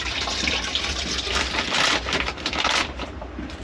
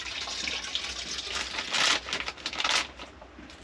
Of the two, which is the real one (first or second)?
second